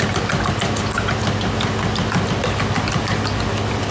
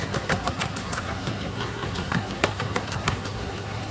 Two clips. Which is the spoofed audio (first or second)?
second